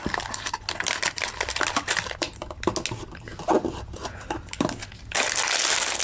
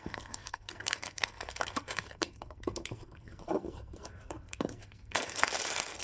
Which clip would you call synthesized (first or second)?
second